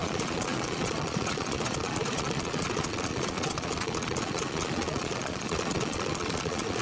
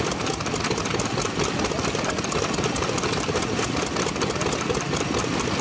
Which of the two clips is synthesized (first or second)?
first